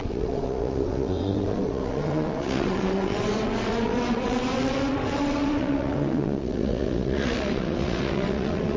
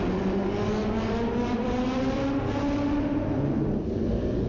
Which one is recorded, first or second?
second